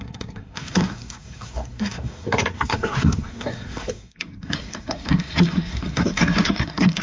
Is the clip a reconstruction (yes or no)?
yes